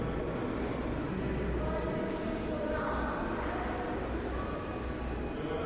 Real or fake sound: real